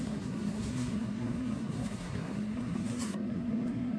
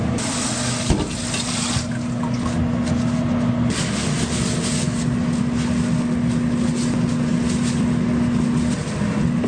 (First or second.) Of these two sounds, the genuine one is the second